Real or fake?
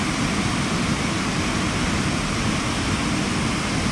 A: real